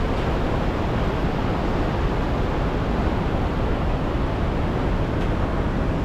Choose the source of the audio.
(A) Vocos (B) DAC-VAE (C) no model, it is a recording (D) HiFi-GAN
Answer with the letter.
C